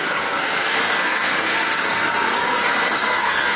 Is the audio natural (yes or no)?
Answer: no